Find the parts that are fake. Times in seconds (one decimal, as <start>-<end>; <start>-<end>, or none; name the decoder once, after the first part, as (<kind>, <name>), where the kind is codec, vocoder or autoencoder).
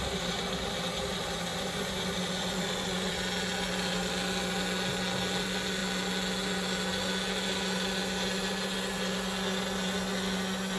1.5-3.1 (vocoder, Vocos)